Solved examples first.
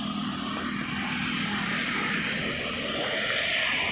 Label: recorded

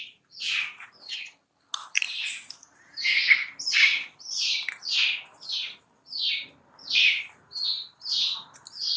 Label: recorded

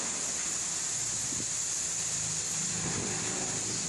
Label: recorded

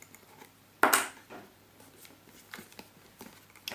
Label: recorded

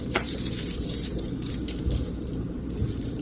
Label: remade